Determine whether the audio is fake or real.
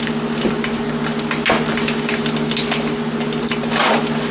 real